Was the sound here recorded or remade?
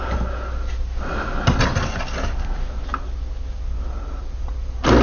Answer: recorded